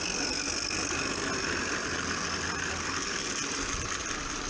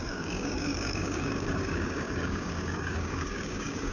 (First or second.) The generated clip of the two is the second